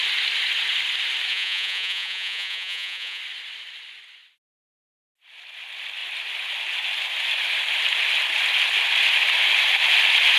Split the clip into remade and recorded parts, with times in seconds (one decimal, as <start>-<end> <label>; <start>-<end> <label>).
0.0-1.3 recorded; 1.3-3.2 remade; 3.2-10.4 recorded